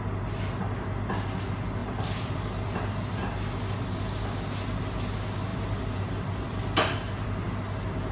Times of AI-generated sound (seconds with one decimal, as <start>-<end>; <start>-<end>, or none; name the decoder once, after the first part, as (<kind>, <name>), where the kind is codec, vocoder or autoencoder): 1.8-3.2 (vocoder, BigVGAN v2); 5.5-7.5